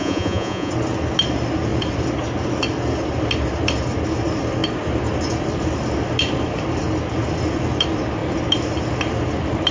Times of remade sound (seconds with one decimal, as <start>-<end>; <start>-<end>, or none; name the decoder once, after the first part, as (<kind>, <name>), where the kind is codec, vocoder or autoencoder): 0.0-0.7 (vocoder, Vocos)